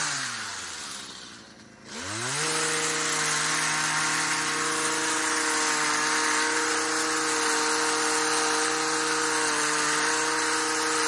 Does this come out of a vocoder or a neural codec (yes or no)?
no